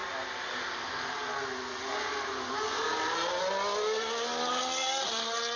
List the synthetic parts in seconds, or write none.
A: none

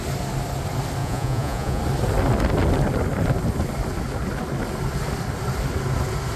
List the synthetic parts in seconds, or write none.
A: 1.0-1.8 (vocoder, Vocos)

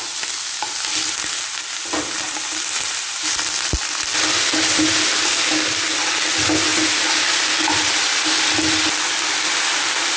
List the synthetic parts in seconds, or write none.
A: none

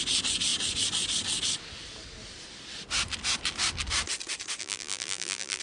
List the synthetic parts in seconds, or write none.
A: 4.6-5.6 (vocoder, BigVGAN v2)

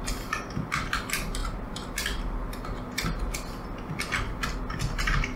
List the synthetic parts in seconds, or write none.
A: none

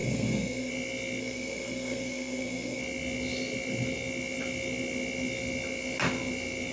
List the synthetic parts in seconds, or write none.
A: 0.0-0.7 (codec, SNAC); 1.2-2.8